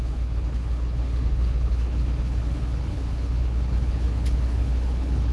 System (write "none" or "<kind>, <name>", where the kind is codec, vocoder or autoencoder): codec, HILCodec